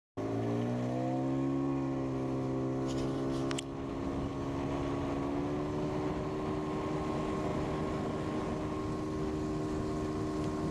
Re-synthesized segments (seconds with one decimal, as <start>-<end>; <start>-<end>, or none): none